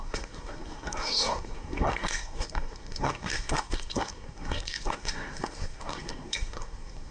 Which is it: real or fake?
fake